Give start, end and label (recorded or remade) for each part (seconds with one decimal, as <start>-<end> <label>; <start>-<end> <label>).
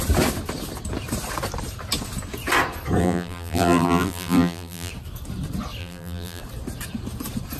0.0-3.0 recorded; 3.0-4.9 remade; 4.9-5.8 recorded; 5.8-6.4 remade; 6.4-7.6 recorded